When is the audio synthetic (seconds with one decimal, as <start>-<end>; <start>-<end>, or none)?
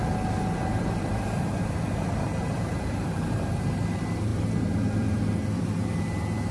0.8-6.5